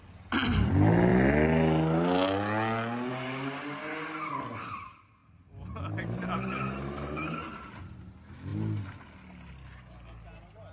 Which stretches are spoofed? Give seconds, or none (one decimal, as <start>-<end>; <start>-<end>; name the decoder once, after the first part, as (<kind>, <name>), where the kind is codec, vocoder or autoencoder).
5.2-7.8 (vocoder, BigVGAN v2)